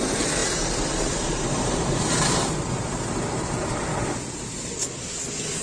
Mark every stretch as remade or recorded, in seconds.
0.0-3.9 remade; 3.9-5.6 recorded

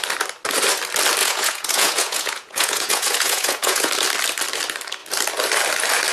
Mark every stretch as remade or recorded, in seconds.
0.0-1.2 recorded; 1.2-3.9 remade; 3.9-6.1 recorded

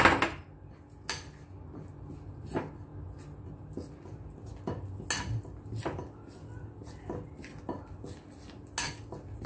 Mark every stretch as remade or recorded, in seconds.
0.0-9.5 recorded